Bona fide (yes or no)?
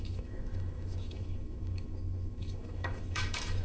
no